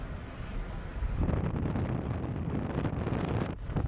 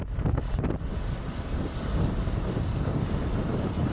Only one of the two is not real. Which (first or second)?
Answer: second